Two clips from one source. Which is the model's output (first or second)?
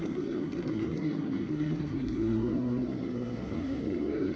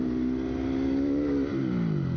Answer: first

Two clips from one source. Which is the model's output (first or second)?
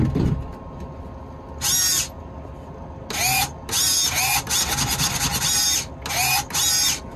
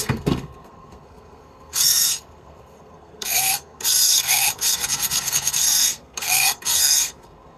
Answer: second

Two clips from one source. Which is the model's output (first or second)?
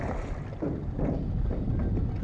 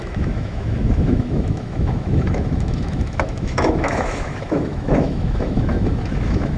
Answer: second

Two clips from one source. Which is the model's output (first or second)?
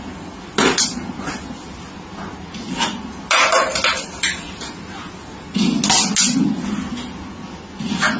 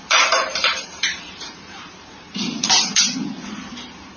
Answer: second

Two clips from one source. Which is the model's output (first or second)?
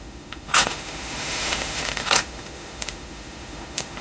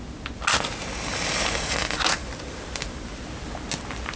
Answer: first